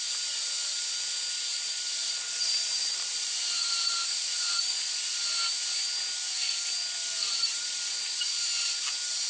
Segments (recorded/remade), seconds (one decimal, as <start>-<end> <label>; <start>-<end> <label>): 0.0-1.5 recorded; 1.5-5.1 remade; 5.1-7.2 recorded; 7.2-8.3 remade; 8.3-9.3 recorded